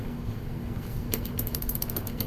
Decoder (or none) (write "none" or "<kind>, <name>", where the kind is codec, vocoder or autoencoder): codec, SNAC